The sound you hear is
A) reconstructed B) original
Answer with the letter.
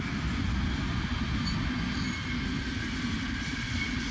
B